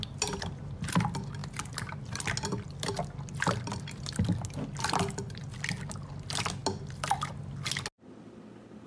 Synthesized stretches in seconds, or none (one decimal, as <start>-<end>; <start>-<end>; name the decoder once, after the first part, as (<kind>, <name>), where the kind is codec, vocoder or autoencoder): none